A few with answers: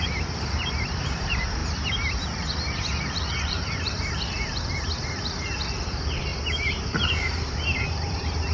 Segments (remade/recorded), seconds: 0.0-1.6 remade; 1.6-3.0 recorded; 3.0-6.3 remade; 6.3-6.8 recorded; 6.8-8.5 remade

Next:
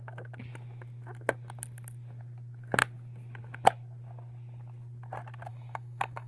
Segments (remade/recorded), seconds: 0.0-5.5 recorded; 5.5-6.3 remade

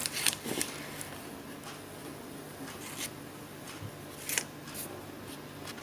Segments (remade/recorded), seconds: 0.0-1.0 remade; 1.0-5.8 recorded

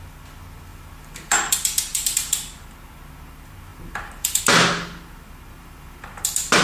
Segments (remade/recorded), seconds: 0.0-0.7 recorded; 0.7-1.5 remade; 1.5-1.9 recorded; 1.9-2.5 remade; 2.5-3.7 recorded; 3.7-4.4 remade; 4.4-6.6 recorded

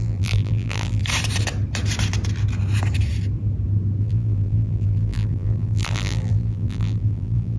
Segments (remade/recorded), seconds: 0.0-1.0 remade; 1.0-4.0 recorded; 4.0-7.6 remade

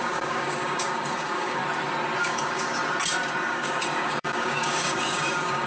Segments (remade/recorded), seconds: 0.0-1.6 remade; 1.6-2.2 recorded; 2.2-2.8 remade; 2.8-3.5 recorded; 3.5-5.7 remade